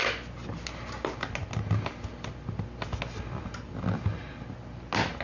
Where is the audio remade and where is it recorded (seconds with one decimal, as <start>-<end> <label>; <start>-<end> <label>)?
0.0-5.2 recorded